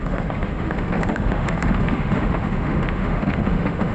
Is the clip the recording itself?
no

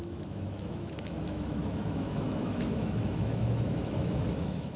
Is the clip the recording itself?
no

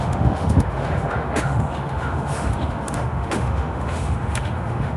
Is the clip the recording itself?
no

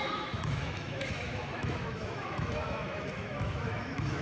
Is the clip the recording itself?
no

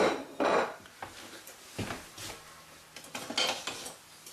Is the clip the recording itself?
yes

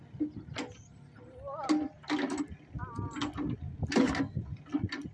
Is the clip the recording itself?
yes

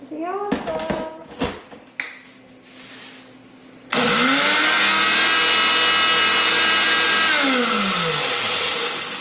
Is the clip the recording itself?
yes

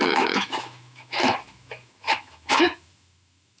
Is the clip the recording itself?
no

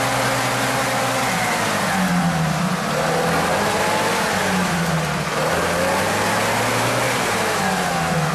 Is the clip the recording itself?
yes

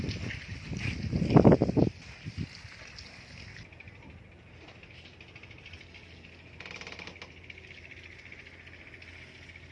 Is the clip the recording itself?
yes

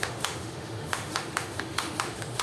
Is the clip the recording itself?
no